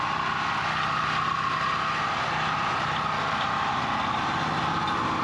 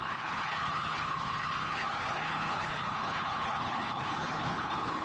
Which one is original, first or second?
first